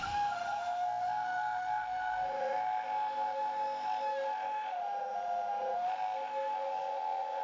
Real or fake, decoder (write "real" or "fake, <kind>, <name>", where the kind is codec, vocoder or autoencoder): fake, autoencoder, DAC-VAE